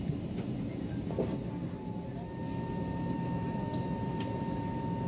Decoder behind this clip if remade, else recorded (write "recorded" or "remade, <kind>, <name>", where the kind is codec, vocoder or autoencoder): recorded